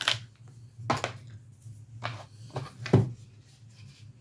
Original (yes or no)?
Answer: yes